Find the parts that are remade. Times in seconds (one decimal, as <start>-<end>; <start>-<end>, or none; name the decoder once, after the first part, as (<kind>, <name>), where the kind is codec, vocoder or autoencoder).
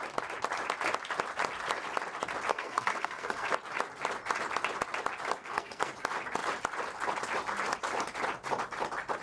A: 2.5-3.5 (codec, SNAC); 5.4-5.9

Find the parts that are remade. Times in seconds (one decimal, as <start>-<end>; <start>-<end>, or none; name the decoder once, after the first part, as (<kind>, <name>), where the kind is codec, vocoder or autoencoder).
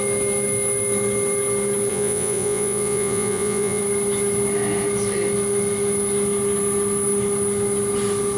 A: 1.9-3.8 (vocoder, Vocos)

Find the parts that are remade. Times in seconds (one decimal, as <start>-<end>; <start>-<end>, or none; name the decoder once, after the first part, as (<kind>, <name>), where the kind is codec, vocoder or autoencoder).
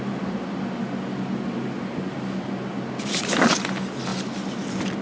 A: none